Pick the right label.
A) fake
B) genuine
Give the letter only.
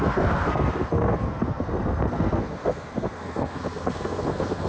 A